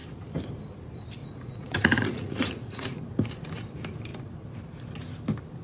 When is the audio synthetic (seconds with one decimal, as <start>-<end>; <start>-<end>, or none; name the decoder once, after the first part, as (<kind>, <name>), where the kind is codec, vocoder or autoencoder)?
1.2-3.0 (vocoder, Vocos)